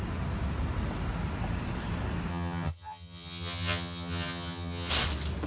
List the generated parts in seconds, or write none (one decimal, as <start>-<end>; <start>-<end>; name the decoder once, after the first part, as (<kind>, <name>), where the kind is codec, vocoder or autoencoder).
2.3-4.9 (vocoder, HiFi-GAN)